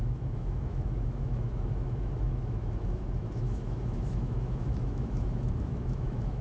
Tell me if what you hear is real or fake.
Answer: fake